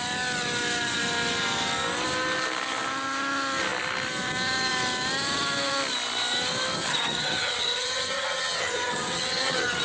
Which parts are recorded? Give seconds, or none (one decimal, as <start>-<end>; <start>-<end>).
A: 0.0-6.9